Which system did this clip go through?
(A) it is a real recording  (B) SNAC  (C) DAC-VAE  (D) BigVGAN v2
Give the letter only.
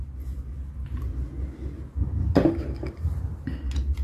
A